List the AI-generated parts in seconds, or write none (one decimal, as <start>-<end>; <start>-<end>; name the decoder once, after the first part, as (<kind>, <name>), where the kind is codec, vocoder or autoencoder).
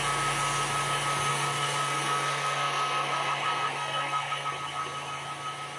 1.3-4.5 (codec, SNAC)